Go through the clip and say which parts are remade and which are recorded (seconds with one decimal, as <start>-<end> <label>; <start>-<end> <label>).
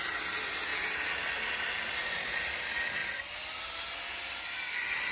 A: 0.0-5.1 recorded